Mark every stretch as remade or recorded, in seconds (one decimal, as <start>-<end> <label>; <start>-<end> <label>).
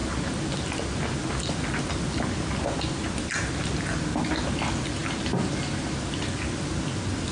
0.0-7.3 recorded